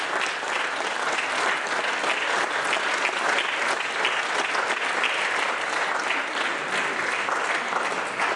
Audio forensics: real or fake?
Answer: real